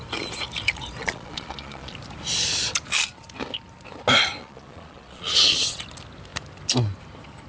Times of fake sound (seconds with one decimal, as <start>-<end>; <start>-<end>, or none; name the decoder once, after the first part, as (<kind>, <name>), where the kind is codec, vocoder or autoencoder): 1.0-1.9 (vocoder, Vocos); 4.4-5.8